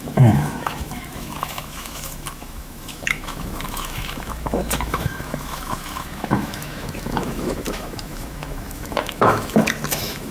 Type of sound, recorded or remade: remade